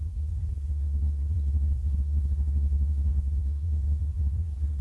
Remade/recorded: remade